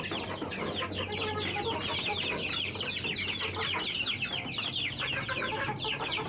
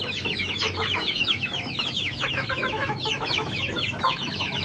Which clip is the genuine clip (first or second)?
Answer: first